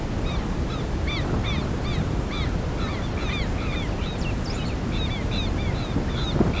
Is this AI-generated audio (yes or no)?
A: no